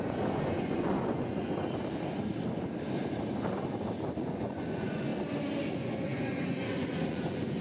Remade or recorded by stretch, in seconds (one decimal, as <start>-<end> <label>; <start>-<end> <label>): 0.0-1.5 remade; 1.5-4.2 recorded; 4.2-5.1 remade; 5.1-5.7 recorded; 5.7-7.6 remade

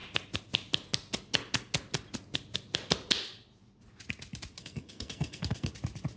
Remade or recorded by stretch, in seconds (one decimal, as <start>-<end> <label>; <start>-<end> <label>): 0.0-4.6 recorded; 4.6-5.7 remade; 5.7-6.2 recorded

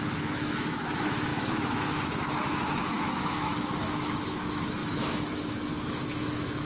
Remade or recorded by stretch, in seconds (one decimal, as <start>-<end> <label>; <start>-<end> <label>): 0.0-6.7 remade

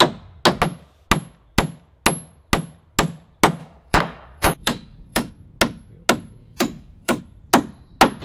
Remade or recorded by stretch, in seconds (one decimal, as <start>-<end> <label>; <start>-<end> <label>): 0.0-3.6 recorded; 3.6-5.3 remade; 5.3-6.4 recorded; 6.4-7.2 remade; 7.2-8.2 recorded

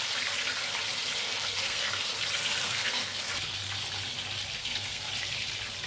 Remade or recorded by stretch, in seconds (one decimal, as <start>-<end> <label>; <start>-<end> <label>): 0.0-1.2 recorded; 1.2-2.1 remade; 2.1-2.6 recorded; 2.6-3.3 remade; 3.3-4.6 recorded; 4.6-5.1 remade; 5.1-5.9 recorded

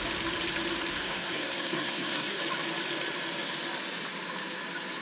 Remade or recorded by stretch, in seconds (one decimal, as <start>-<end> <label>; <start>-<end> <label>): 0.0-0.9 recorded; 0.9-2.4 remade; 2.4-5.0 recorded

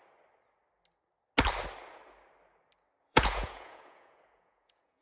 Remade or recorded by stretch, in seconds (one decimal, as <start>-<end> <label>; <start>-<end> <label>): 0.0-3.0 recorded; 3.0-5.0 remade

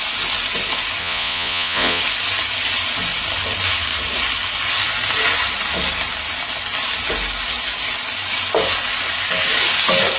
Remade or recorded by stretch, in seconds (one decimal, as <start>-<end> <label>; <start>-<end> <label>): 0.0-1.0 recorded; 1.0-2.0 remade; 2.0-10.2 recorded